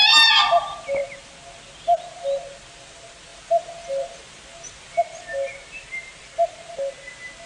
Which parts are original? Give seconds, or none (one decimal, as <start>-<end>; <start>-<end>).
0.0-7.5